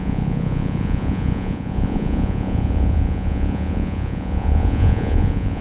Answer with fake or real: fake